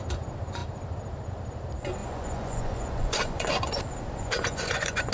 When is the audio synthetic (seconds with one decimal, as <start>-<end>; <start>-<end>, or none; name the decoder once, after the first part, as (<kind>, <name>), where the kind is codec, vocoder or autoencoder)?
2.0-3.8 (vocoder, Vocos); 4.2-5.1

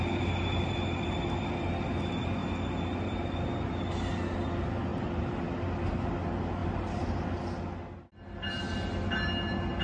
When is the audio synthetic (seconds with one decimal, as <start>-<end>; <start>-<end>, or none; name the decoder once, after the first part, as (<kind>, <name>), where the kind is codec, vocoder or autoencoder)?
4.9-5.4 (vocoder, BigVGAN v2); 6.6-7.1

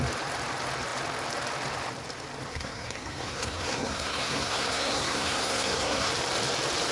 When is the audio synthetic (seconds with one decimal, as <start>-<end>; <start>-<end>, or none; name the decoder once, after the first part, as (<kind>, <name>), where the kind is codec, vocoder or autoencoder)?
2.5-6.1 (codec, SNAC)